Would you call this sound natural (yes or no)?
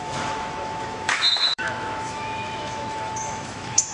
no